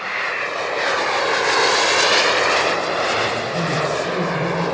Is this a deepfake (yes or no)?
no